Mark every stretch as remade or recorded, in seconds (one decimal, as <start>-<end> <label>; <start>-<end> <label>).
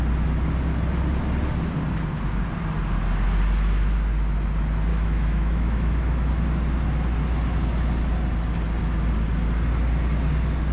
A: 0.0-4.9 recorded; 4.9-6.3 remade; 6.3-10.7 recorded